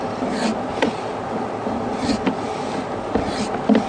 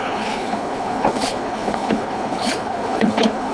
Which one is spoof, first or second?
second